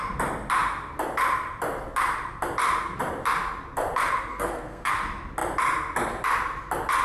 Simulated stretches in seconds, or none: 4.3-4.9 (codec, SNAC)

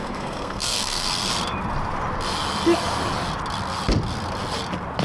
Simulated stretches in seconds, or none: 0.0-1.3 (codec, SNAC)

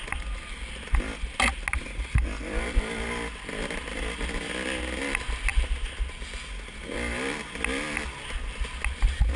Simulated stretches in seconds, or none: none

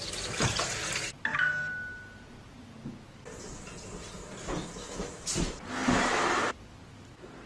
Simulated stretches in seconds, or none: none